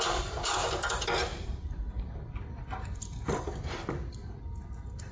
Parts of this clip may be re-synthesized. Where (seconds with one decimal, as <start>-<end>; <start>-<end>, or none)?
1.3-4.4